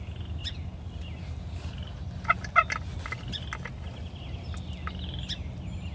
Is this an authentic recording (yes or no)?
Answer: yes